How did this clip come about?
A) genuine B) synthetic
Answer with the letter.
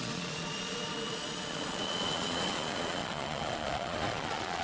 B